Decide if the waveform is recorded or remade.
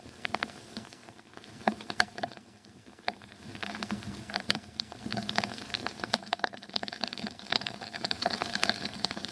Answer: remade